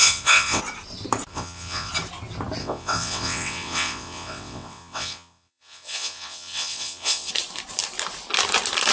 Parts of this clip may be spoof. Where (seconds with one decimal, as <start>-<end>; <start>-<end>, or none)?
0.0-0.6; 1.3-1.9; 2.6-7.3